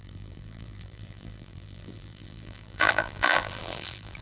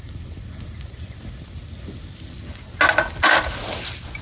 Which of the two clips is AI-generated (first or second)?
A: first